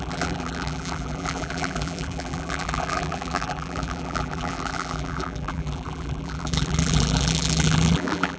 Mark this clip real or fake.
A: fake